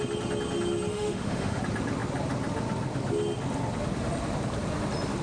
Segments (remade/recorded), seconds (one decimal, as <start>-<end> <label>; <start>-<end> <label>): 0.0-0.9 recorded; 0.9-1.6 remade; 1.6-5.2 recorded